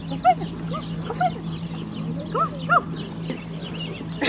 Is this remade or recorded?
recorded